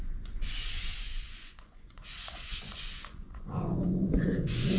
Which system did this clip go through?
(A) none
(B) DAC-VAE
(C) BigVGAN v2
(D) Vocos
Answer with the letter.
D